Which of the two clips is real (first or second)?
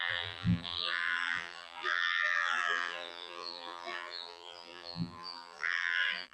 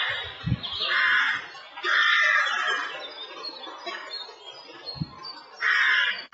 second